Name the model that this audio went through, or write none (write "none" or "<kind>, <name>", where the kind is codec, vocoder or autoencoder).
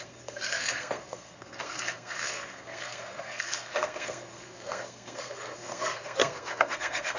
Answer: codec, SNAC